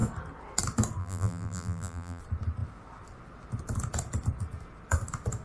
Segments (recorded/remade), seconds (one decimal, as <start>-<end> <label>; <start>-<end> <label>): 0.0-1.0 recorded; 1.0-2.2 remade; 2.2-5.4 recorded